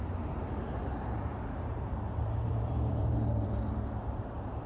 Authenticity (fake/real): fake